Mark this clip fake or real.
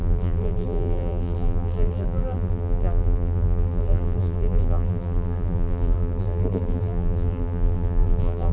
fake